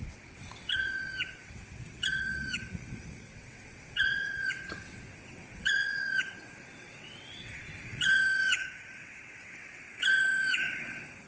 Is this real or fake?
fake